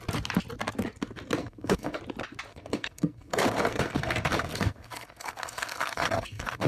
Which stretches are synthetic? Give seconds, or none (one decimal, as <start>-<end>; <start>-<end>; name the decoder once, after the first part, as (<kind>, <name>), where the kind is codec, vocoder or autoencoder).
1.4-2.0 (codec, SNAC); 2.5-6.7